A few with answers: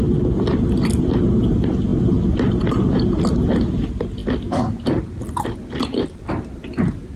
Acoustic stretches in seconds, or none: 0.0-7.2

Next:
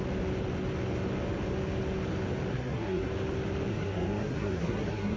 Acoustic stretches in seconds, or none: 0.0-2.5; 3.1-3.7

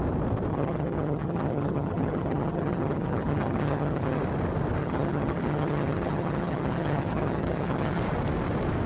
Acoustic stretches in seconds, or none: 0.0-0.5; 4.2-4.8; 8.0-8.9

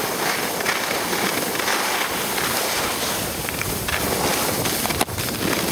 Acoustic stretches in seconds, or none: 0.0-5.7